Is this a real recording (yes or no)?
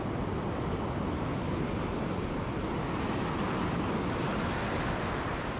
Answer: yes